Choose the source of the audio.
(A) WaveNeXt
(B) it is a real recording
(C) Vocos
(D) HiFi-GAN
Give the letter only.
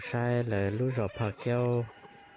B